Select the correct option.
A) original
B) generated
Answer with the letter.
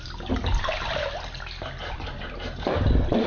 A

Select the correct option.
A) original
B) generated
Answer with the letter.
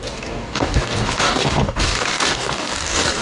B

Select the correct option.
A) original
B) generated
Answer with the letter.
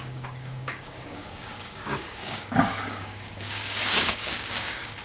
B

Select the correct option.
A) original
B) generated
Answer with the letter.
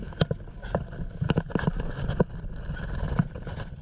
A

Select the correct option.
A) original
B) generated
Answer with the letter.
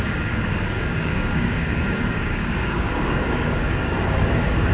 B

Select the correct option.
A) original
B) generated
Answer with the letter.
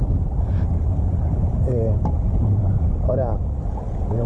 A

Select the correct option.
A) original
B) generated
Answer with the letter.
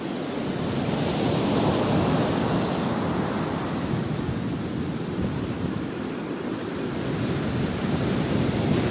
A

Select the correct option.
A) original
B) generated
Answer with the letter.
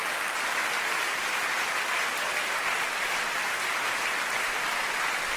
A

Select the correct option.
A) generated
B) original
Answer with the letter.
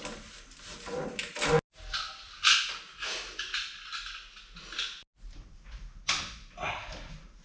B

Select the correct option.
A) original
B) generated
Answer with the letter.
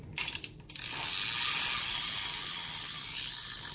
A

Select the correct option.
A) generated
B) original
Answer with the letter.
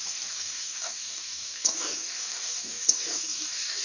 A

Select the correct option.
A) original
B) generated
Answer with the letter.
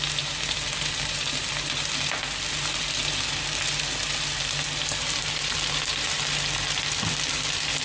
A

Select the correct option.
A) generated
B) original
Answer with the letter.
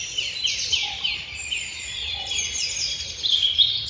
B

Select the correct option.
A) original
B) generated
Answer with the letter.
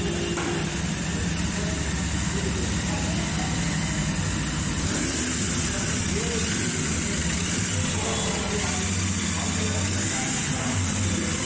A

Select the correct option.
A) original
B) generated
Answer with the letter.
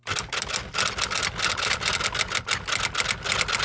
A